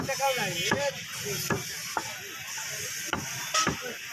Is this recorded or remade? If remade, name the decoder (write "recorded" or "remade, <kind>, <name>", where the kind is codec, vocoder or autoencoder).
recorded